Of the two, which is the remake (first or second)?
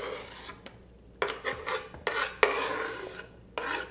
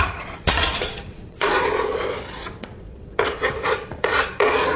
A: second